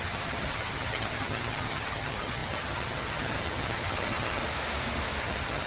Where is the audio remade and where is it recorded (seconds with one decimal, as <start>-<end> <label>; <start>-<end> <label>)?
0.0-4.4 remade; 4.4-5.2 recorded; 5.2-5.7 remade